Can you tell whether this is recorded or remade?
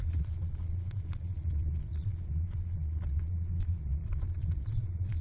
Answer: remade